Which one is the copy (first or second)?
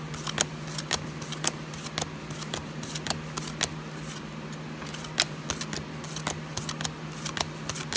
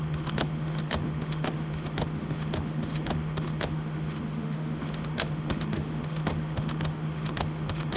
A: second